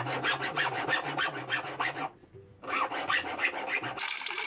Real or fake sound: real